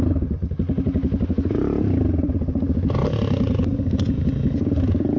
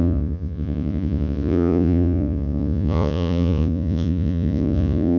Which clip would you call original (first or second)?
first